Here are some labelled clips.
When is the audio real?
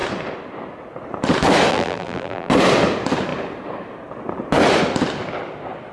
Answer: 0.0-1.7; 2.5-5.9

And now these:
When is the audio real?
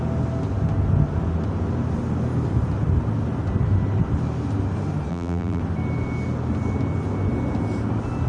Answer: 0.0-5.1; 5.6-8.3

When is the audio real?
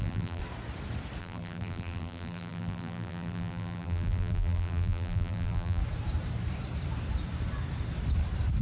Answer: 0.4-1.2; 5.8-8.6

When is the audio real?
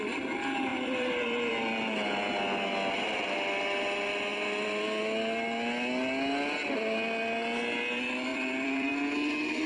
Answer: 0.0-0.7; 1.5-4.3; 5.0-8.3; 8.9-9.7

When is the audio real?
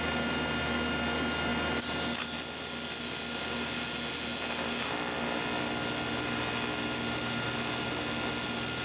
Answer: 0.0-8.8